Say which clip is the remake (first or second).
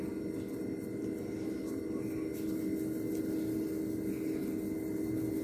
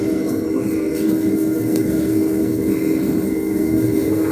second